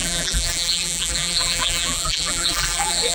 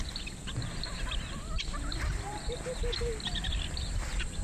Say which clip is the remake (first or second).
first